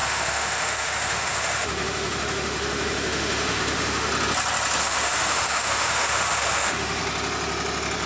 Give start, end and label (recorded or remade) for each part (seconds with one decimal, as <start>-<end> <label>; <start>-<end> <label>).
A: 0.0-4.1 remade; 4.1-4.8 recorded; 4.8-7.0 remade; 7.0-8.1 recorded